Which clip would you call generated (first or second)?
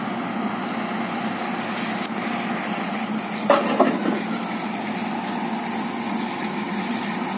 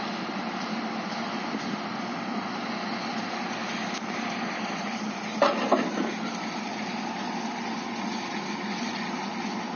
second